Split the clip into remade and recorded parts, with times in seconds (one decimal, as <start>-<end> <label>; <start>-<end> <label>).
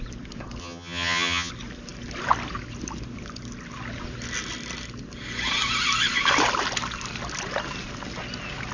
0.0-0.6 recorded; 0.6-1.5 remade; 1.5-8.7 recorded